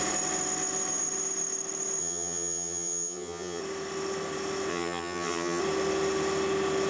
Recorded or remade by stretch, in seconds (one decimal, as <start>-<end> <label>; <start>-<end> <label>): 0.0-2.0 recorded; 2.0-3.6 remade; 3.6-4.7 recorded; 4.7-5.6 remade; 5.6-6.9 recorded